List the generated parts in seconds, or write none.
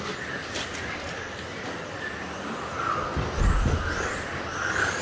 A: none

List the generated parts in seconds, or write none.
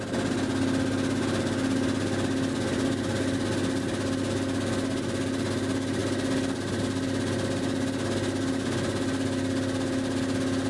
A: none